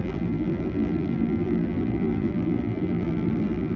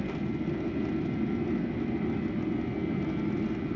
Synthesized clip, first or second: first